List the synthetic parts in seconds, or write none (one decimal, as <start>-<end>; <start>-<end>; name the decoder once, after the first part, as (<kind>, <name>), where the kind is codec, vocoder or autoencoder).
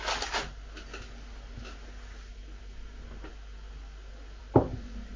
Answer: none